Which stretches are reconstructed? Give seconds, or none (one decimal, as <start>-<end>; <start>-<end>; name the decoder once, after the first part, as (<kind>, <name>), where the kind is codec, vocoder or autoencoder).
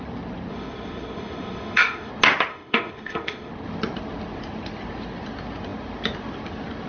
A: 0.5-2.1 (autoencoder, DAC-VAE); 2.5-3.5